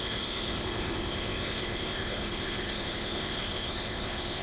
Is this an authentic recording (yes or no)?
no